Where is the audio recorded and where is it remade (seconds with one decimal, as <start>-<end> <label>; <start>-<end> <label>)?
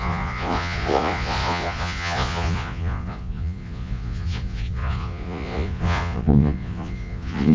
0.0-7.5 remade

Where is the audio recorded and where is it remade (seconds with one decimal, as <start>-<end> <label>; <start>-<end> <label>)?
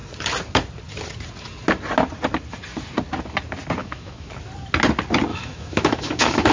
0.0-3.8 recorded; 3.8-4.3 remade; 4.3-5.3 recorded; 5.3-6.5 remade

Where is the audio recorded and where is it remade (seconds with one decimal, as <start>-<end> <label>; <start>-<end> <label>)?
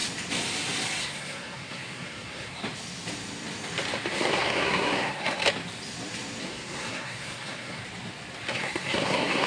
0.0-1.0 recorded; 1.0-2.6 remade; 2.6-4.1 recorded; 4.1-5.4 remade; 5.4-6.4 recorded; 6.4-7.8 remade; 7.8-8.5 recorded; 8.5-9.5 remade